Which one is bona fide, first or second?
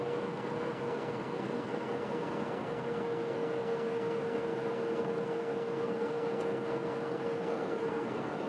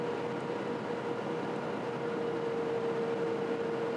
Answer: second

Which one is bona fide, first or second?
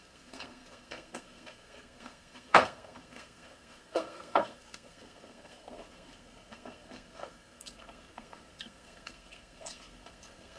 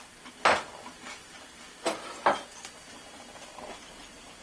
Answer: second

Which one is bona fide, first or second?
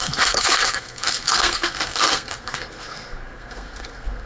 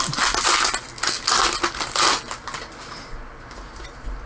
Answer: second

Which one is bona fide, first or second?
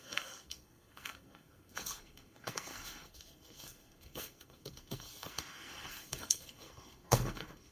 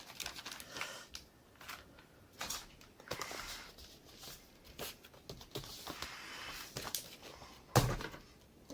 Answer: second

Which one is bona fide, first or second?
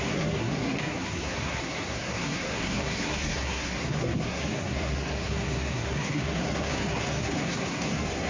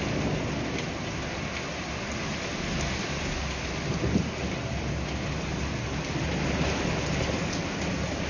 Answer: second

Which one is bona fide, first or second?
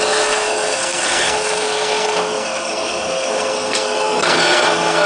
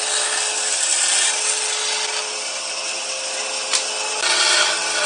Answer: second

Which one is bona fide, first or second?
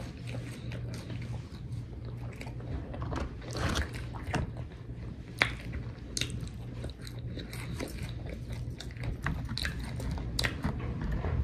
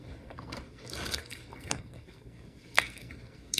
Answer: first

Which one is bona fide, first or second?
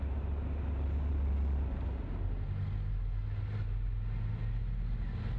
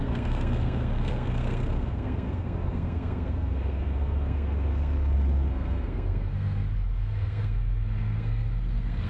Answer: first